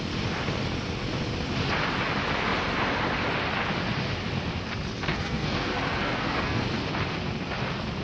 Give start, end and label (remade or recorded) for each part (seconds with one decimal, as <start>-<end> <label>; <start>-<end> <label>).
0.0-5.1 recorded; 5.1-6.6 remade; 6.6-8.0 recorded